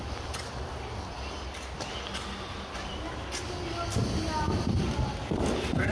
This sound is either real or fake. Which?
real